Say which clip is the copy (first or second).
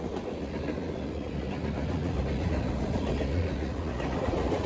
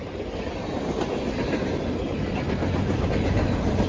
first